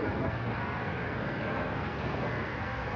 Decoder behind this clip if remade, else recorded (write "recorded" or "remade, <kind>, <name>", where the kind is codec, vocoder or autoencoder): remade, codec, SNAC